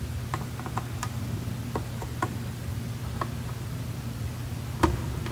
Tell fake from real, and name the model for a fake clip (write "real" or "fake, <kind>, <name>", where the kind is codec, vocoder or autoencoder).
real